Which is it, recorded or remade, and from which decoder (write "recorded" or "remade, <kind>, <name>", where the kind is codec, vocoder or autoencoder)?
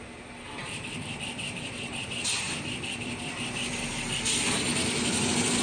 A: recorded